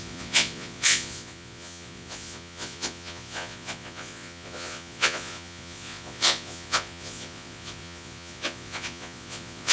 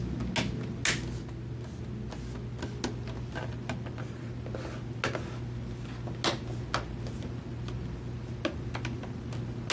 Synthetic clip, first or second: first